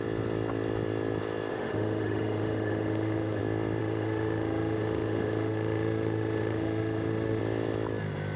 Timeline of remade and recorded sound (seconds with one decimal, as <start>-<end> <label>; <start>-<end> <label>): 0.0-1.5 recorded; 1.5-3.4 remade; 3.4-3.8 recorded; 3.8-7.4 remade; 7.4-8.4 recorded